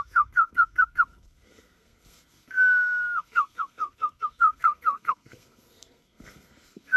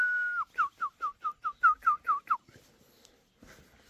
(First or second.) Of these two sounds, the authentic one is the second